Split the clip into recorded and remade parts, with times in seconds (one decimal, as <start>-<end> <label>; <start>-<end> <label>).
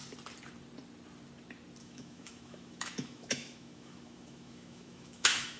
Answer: 0.0-1.8 recorded; 1.8-5.6 remade